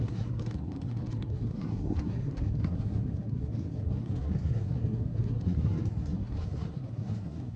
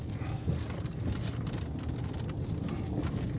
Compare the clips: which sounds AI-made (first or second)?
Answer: first